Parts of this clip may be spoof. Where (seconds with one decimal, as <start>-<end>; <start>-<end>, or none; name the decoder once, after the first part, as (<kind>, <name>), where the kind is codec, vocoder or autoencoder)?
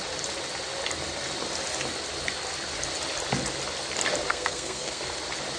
4.3-5.0 (codec, SNAC)